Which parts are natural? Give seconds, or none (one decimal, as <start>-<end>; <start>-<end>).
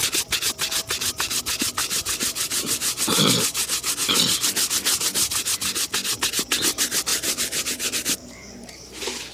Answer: 0.0-1.8; 3.3-7.1; 8.9-9.3